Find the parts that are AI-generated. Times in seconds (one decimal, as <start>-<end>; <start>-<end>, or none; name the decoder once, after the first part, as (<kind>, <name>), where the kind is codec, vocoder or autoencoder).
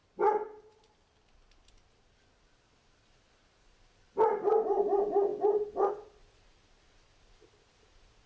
0.0-2.3 (vocoder, BigVGAN v2)